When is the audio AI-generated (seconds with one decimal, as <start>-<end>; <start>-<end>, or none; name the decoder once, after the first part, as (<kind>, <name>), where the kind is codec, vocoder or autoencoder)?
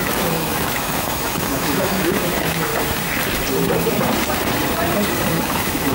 0.0-2.7 (autoencoder, DAC-VAE); 5.3-5.9